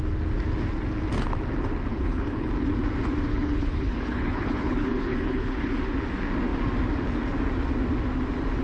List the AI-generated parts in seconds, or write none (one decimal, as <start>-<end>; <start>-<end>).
1.9-2.5; 3.3-5.8